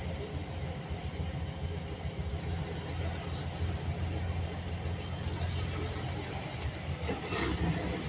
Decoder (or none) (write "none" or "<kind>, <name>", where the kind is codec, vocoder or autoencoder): none